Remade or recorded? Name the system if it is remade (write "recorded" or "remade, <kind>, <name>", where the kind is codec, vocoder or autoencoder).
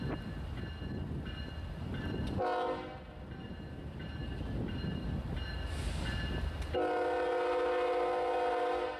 recorded